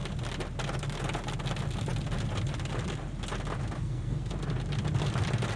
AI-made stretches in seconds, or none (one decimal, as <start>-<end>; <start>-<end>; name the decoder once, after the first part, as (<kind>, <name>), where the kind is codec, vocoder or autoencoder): 3.8-4.3 (codec, SNAC)